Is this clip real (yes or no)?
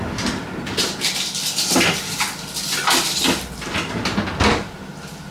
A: yes